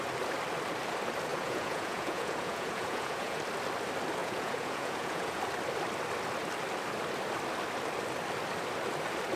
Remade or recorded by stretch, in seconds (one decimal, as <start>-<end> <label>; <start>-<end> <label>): 0.0-1.3 recorded; 1.3-3.4 remade; 3.4-4.2 recorded; 4.2-5.4 remade; 5.4-9.4 recorded